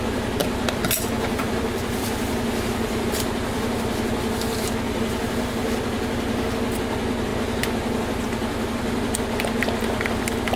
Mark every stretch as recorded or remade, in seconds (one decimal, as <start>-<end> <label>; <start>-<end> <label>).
0.0-0.4 recorded; 0.4-4.1 remade; 4.1-10.6 recorded